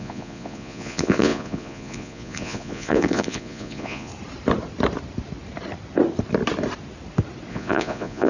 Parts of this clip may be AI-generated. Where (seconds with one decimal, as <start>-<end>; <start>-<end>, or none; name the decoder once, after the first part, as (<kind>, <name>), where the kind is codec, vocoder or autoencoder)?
0.0-4.1 (vocoder, Vocos); 7.5-8.3